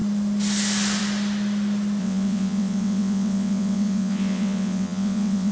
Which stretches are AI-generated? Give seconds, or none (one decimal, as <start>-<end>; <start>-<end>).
2.0-5.5

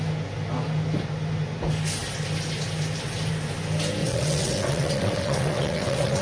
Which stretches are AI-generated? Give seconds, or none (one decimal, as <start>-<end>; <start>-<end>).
4.0-6.2

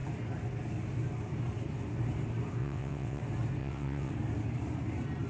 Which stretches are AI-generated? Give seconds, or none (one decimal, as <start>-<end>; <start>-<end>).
2.6-3.2; 3.6-4.1

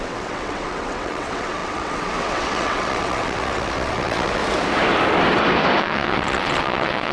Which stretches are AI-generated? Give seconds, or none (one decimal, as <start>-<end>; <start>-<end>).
0.0-4.4; 5.8-7.1

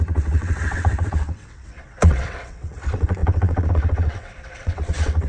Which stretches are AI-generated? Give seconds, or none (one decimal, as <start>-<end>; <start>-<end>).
0.0-5.3